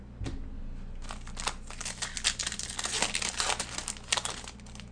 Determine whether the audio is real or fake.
real